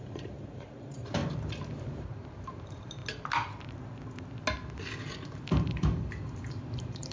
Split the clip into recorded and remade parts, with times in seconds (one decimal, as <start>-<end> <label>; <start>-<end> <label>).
0.0-1.2 remade; 1.2-1.7 recorded; 1.7-3.0 remade; 3.0-5.5 recorded; 5.5-7.1 remade